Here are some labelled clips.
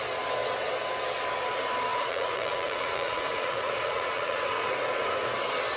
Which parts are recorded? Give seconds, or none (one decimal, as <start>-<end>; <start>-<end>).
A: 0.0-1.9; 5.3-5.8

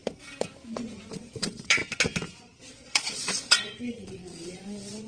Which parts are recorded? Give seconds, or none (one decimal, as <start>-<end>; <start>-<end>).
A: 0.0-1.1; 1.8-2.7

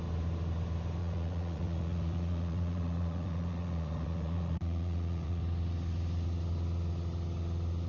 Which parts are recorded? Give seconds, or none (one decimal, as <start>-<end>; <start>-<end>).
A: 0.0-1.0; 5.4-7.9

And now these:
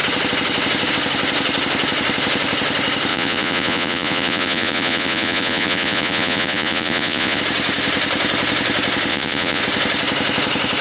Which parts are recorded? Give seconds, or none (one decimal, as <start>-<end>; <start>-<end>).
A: 0.0-3.1; 7.4-9.1; 9.6-10.8

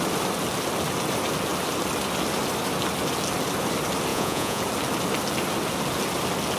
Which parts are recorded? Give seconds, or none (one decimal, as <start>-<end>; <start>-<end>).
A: 0.0-4.1; 4.6-6.6